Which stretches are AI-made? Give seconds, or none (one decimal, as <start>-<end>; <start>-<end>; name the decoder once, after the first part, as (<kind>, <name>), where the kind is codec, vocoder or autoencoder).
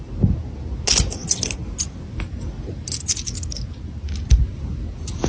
none